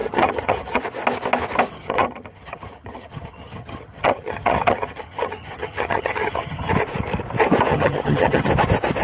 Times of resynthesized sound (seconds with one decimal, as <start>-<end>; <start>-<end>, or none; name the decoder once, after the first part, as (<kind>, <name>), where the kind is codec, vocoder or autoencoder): 0.0-0.8 (vocoder, HiFi-GAN); 1.7-6.7; 7.7-8.5